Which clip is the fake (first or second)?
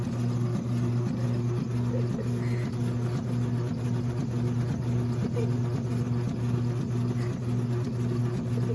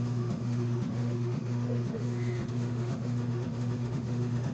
second